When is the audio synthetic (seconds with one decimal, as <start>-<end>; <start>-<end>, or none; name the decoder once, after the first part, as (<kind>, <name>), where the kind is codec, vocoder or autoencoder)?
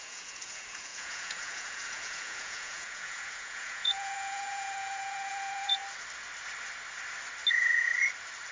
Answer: 0.0-5.8 (vocoder, Vocos); 7.5-7.9